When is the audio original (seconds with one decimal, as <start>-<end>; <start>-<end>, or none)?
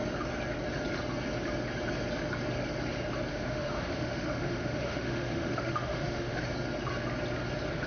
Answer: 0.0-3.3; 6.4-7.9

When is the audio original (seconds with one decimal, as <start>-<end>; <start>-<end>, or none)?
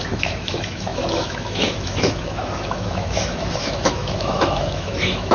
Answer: none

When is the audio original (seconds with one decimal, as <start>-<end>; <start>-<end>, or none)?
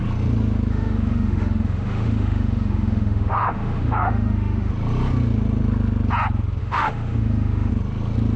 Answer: 0.0-0.7; 4.7-6.6; 7.7-8.4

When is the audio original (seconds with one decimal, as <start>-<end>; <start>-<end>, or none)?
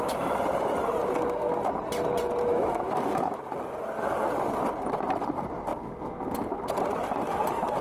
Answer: 0.0-2.5; 3.4-7.8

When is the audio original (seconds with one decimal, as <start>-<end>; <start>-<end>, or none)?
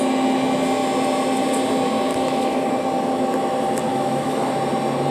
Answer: 0.0-2.1; 2.7-3.9; 4.5-5.1